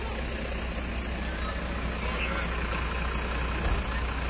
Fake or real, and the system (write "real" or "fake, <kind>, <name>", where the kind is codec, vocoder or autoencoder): real